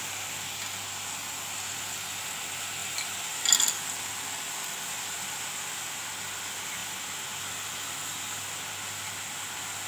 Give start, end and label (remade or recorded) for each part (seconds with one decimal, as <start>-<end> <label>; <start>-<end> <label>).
0.0-9.9 recorded